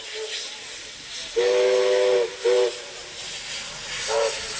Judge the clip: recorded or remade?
recorded